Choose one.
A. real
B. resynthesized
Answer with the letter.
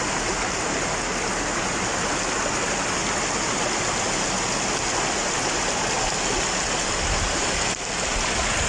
A